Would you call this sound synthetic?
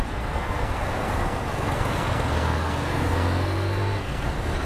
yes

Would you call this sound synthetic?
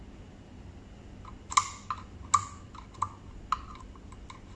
no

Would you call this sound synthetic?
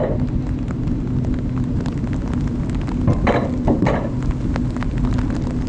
no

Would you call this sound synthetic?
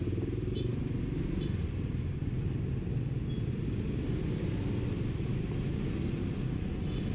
no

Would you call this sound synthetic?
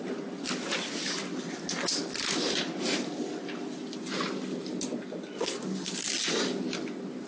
no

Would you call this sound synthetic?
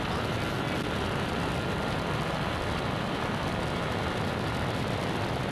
no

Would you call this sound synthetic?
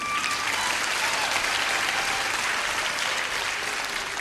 no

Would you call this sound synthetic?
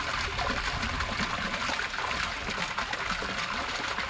no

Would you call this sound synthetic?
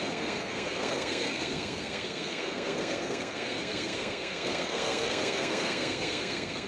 yes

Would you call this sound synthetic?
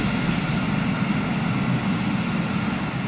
no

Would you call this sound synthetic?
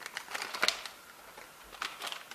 no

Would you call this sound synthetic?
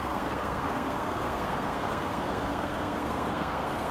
yes